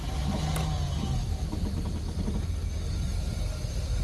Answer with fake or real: real